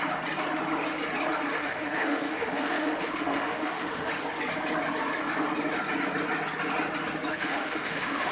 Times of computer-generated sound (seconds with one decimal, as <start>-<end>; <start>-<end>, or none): 1.6-4.1; 7.3-8.3